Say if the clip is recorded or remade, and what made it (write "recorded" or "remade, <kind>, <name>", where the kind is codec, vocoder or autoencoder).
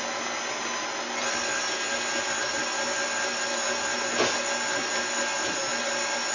recorded